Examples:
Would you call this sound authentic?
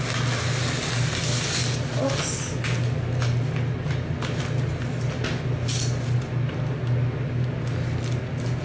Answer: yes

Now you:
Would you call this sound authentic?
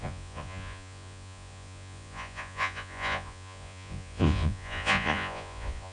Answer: no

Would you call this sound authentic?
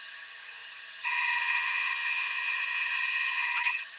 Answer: no